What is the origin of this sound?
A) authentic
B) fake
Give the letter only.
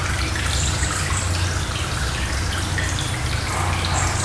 A